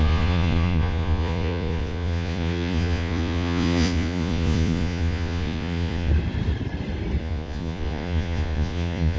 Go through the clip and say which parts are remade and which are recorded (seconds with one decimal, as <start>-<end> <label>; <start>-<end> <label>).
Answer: 0.0-6.1 remade; 6.1-7.2 recorded; 7.2-9.2 remade